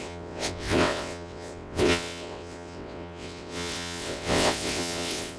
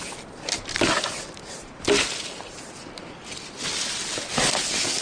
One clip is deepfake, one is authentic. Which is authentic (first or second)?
second